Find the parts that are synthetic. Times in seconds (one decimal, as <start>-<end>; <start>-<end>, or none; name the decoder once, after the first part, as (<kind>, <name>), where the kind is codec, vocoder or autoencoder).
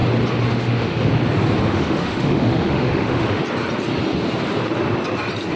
0.5-1.1 (autoencoder, DAC-VAE); 1.6-3.4